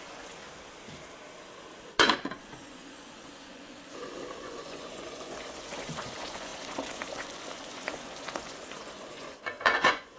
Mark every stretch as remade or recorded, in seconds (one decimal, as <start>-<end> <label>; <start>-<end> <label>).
0.0-0.4 remade; 0.4-1.8 recorded; 1.8-10.2 remade